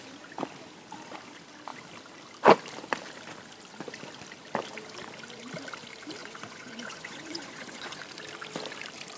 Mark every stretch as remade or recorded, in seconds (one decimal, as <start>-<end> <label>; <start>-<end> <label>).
0.0-6.2 recorded; 6.2-8.0 remade; 8.0-9.2 recorded